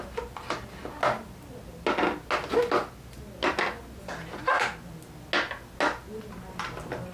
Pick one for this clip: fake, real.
real